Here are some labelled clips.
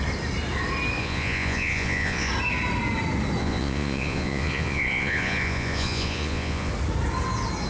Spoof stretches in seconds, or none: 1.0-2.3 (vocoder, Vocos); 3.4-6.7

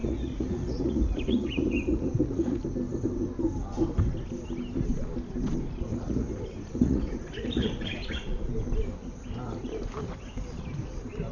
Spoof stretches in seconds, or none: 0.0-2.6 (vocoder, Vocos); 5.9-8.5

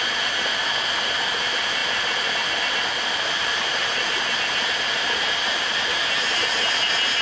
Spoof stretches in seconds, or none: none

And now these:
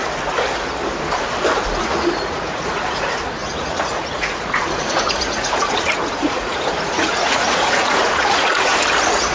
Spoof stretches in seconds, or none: 1.8-8.7 (vocoder, Vocos)